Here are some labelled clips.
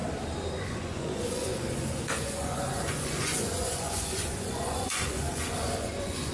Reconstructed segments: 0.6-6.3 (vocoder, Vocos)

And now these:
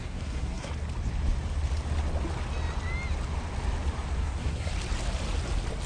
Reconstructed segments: 0.0-0.7 (codec, SNAC); 4.2-4.7

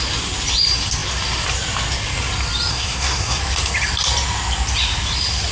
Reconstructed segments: 2.7-3.4 (codec, SNAC)

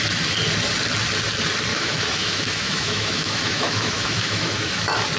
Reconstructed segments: 1.7-4.8 (autoencoder, DAC-VAE)

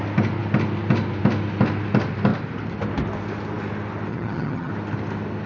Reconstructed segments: 4.1-4.7 (vocoder, HiFi-GAN)

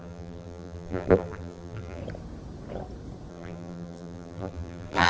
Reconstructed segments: 0.0-2.0 (vocoder, BigVGAN v2); 3.3-5.1

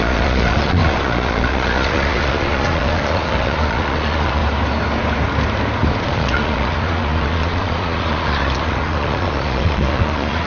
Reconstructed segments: 0.0-4.4 (vocoder, Vocos); 6.0-10.5